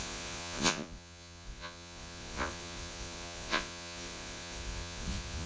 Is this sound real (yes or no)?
no